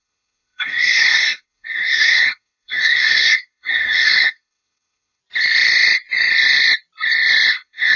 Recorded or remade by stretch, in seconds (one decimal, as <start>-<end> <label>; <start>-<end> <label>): 0.0-5.2 remade; 5.2-7.5 recorded; 7.5-8.0 remade